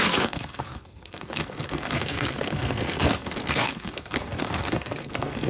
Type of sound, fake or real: fake